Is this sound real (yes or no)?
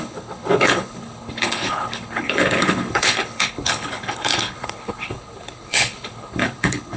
no